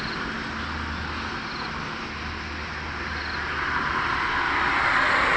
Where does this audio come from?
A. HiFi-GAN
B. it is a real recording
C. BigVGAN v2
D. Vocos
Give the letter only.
B